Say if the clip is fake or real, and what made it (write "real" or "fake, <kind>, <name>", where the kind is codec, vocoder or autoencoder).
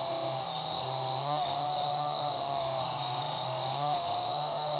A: fake, autoencoder, DAC-VAE